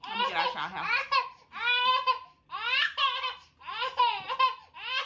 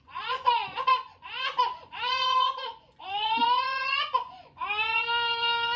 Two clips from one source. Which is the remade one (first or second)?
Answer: second